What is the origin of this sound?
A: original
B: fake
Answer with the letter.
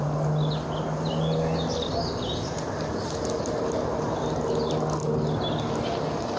A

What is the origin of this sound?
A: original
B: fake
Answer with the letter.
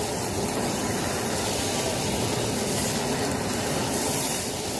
A